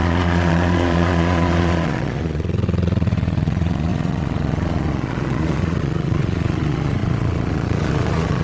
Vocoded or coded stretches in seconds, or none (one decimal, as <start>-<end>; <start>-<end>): 0.0-8.4